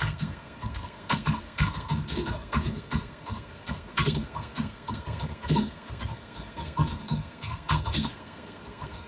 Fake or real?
fake